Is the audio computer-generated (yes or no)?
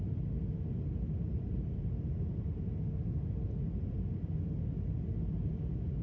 no